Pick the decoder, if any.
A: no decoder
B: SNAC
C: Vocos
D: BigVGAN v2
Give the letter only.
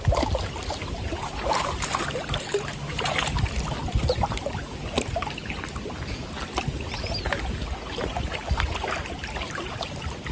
A